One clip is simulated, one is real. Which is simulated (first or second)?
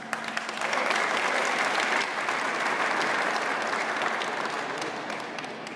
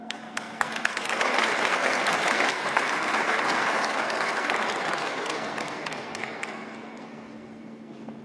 second